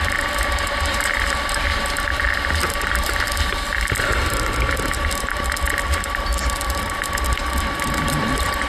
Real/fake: fake